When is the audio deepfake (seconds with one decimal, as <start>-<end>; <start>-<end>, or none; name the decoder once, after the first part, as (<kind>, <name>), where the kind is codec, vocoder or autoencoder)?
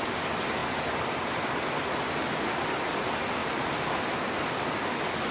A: none